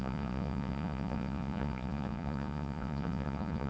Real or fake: fake